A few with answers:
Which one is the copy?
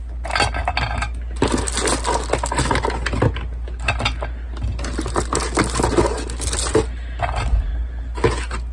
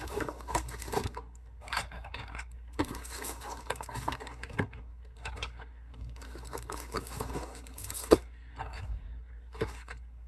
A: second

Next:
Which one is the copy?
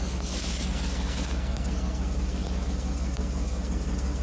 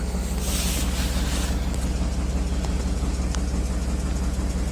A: first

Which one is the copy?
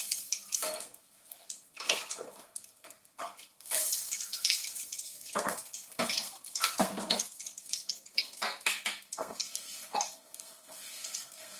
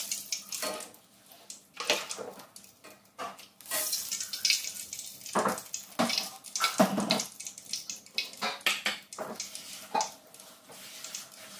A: first